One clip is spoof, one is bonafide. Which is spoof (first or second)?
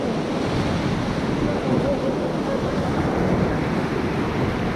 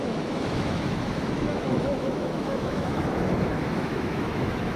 second